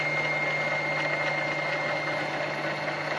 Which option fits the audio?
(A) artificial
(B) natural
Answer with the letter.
B